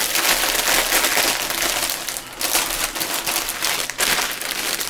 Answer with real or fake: real